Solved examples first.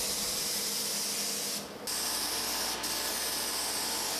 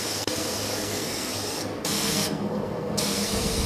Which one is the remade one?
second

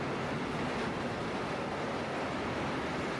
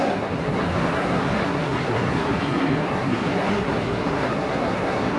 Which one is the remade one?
second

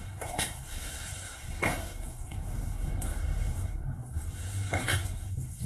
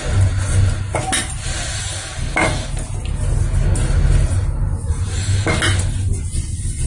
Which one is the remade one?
first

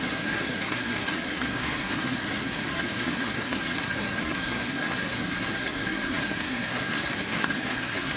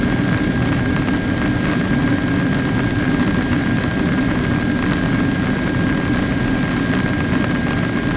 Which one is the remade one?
first